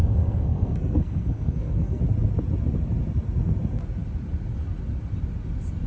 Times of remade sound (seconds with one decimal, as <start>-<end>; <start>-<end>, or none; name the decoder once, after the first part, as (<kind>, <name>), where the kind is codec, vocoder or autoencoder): 0.0-2.0 (codec, SNAC)